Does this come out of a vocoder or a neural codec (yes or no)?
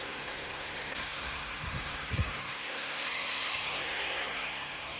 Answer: yes